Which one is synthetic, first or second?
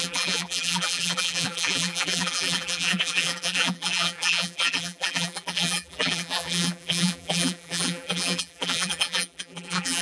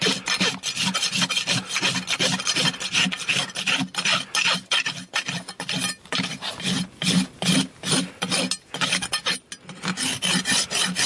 first